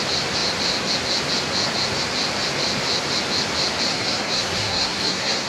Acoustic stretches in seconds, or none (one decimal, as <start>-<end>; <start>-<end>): 0.0-3.9